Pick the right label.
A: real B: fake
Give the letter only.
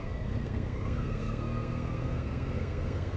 B